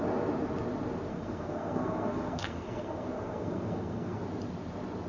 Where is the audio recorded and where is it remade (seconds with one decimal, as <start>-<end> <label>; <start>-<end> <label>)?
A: 0.0-1.1 recorded; 1.1-4.2 remade; 4.2-5.1 recorded